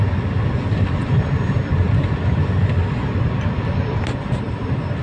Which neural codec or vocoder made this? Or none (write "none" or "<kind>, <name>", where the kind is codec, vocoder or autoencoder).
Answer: none